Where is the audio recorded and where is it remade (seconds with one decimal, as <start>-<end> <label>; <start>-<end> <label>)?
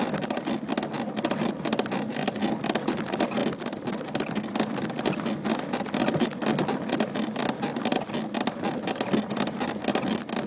0.0-10.5 recorded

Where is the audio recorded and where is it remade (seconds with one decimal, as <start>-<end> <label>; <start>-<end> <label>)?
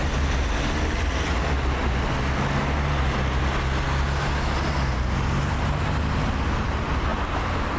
0.0-7.8 recorded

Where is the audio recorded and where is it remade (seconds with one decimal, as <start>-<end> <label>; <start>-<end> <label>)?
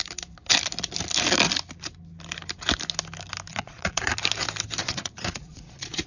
0.0-3.5 recorded; 3.5-4.1 remade; 4.1-4.8 recorded; 4.8-6.1 remade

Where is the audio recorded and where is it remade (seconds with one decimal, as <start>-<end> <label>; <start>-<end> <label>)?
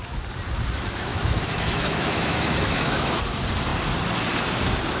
0.0-1.1 recorded; 1.1-3.1 remade; 3.1-5.0 recorded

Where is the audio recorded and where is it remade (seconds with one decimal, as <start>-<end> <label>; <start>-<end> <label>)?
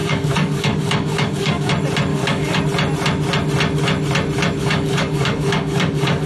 0.0-1.7 remade; 1.7-2.1 recorded; 2.1-2.6 remade; 2.6-4.6 recorded; 4.6-6.3 remade